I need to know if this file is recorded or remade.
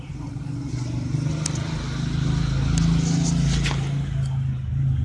recorded